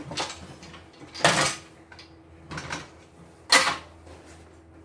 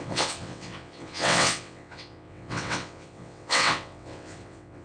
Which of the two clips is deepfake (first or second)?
second